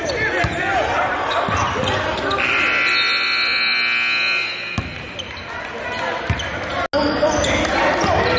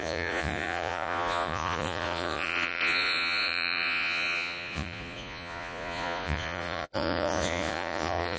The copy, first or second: second